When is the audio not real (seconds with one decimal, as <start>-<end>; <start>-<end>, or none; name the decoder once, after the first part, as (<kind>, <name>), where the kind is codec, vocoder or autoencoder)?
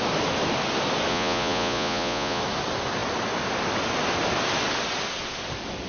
1.1-2.4 (vocoder, Vocos)